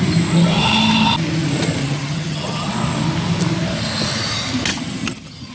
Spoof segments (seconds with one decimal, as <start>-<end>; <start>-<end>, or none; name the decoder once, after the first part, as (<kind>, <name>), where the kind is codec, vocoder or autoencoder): 1.8-2.7 (vocoder, HiFi-GAN); 4.7-5.5